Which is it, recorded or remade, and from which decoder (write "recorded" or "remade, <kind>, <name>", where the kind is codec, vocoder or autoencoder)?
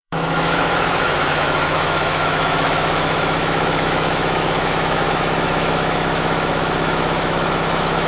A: remade, autoencoder, DAC-VAE